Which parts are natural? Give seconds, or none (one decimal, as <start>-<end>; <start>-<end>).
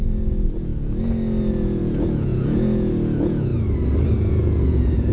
0.7-1.5; 3.5-4.1